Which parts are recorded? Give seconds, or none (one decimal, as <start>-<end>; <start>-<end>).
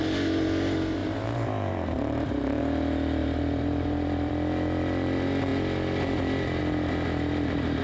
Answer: 0.0-1.0; 2.6-3.2; 4.3-7.8